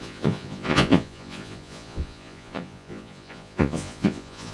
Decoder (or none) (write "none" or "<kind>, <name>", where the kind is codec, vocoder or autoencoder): vocoder, Vocos